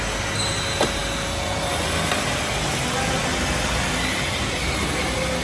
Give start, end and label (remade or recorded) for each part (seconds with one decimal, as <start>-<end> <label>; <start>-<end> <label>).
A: 0.0-5.4 recorded